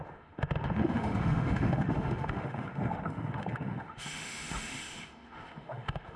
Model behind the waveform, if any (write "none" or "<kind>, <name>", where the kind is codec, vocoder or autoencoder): autoencoder, DAC-VAE